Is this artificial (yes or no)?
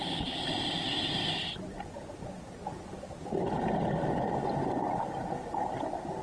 no